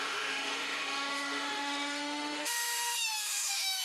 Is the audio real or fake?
fake